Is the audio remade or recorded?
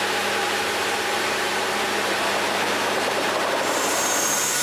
remade